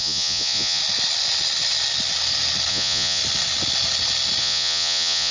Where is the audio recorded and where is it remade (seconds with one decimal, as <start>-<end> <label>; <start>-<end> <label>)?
0.0-0.8 remade; 0.8-2.7 recorded; 2.7-3.2 remade; 3.2-4.4 recorded; 4.4-5.3 remade